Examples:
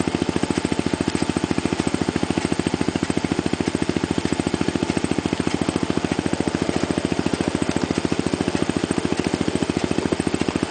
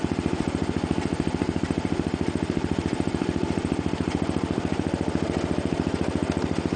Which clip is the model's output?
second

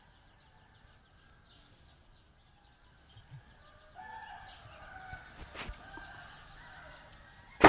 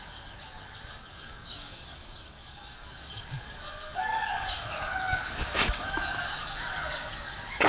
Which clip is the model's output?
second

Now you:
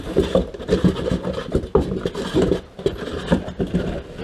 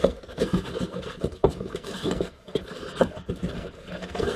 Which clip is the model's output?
second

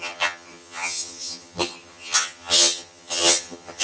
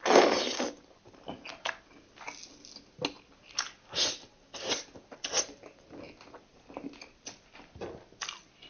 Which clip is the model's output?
first